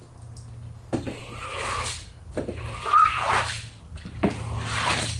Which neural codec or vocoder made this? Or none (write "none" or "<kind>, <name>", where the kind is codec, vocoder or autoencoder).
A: none